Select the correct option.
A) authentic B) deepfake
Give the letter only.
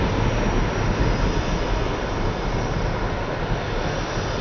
A